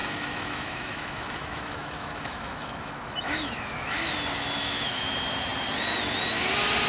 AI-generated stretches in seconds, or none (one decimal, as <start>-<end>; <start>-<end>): 0.0-4.1; 4.6-5.1